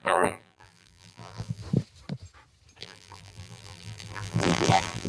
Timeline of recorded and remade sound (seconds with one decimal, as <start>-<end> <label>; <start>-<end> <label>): 0.0-1.6 remade; 1.6-2.8 recorded; 2.8-5.1 remade